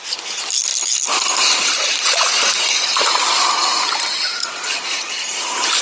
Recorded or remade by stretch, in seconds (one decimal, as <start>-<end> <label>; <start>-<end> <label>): 0.0-4.4 recorded; 4.4-5.1 remade; 5.1-5.8 recorded